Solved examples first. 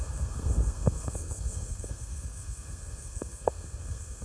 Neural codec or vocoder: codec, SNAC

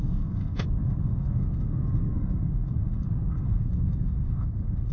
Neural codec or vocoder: codec, SNAC